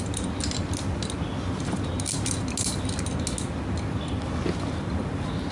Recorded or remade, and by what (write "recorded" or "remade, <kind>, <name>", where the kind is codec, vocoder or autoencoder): recorded